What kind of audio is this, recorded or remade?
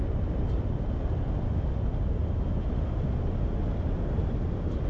recorded